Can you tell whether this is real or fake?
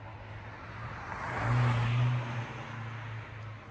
real